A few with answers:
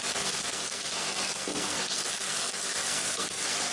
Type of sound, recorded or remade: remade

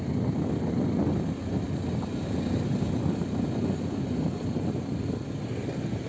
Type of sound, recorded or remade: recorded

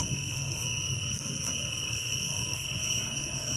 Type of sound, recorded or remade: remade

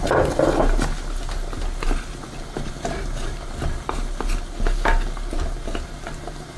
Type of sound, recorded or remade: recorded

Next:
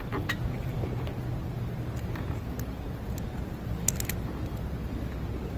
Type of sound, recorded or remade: recorded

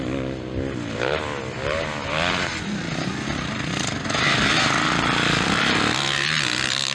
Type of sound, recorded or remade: recorded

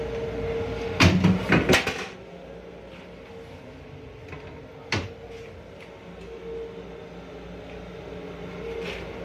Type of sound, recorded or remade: recorded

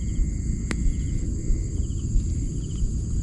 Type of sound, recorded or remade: recorded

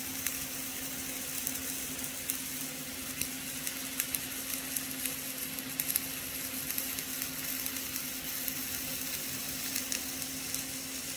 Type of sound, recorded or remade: recorded